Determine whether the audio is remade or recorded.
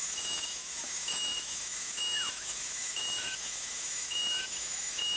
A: remade